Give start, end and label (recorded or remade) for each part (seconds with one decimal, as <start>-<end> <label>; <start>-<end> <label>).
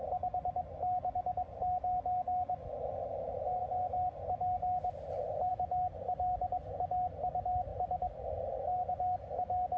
0.0-9.8 recorded